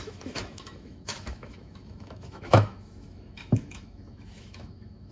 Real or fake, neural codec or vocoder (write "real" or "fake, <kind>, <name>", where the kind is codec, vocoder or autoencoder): fake, autoencoder, DAC-VAE